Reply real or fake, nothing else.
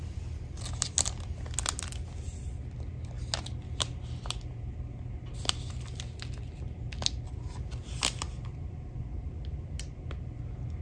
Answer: real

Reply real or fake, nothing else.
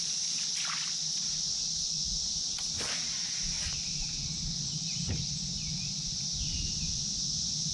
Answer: real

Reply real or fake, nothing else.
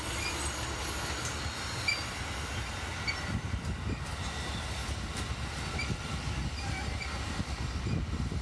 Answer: real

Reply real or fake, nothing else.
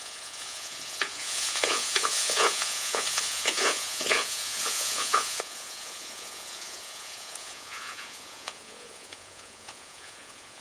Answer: fake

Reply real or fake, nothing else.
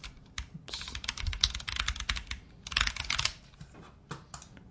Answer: real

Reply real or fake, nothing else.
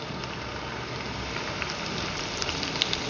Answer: real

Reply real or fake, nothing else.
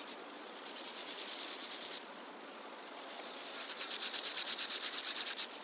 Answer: fake